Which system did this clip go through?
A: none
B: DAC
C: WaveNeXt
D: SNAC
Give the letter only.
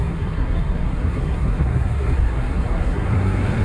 D